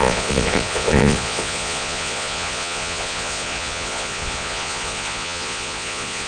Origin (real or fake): fake